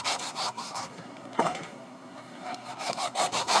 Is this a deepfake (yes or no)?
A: yes